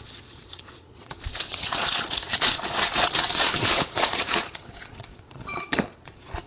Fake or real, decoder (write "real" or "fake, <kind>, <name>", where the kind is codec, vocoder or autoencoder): fake, vocoder, Vocos